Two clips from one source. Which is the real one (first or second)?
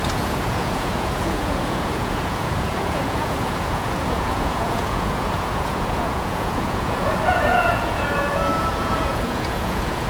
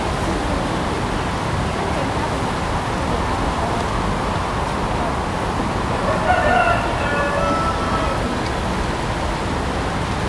second